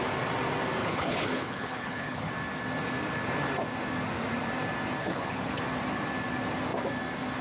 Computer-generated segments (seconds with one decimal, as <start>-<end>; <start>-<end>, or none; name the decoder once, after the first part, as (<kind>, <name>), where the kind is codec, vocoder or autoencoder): 0.8-2.3 (codec, HILCodec); 5.0-5.6